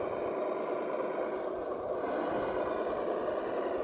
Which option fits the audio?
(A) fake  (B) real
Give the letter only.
B